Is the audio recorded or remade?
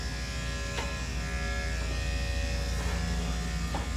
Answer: recorded